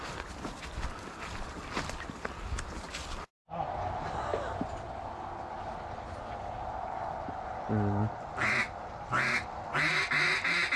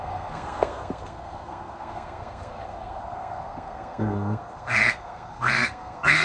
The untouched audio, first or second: first